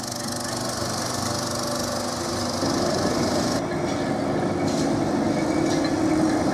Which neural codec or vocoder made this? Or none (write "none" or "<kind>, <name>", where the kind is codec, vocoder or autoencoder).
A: none